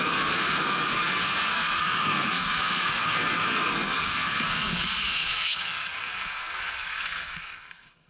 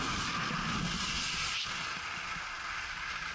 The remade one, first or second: first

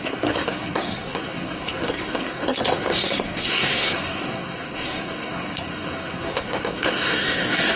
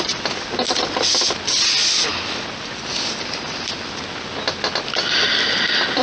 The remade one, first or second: first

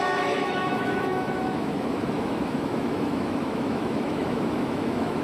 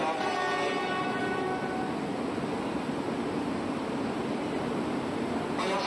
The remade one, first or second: first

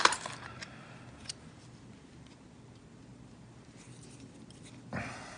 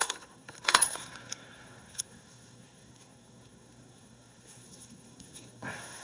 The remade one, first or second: second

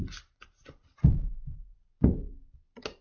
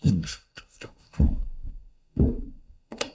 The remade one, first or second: second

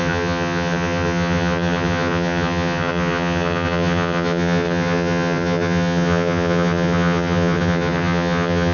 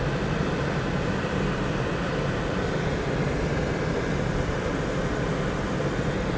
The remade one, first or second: first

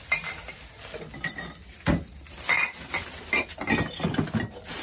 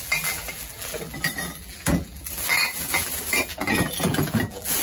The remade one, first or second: second